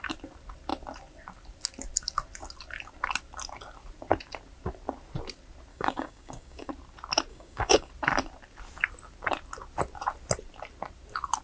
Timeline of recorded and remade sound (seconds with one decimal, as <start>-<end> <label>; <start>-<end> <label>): 0.0-5.7 recorded; 5.7-6.7 remade; 6.7-7.3 recorded; 7.3-7.9 remade; 7.9-11.4 recorded